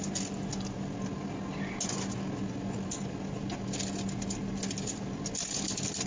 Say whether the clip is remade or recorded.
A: recorded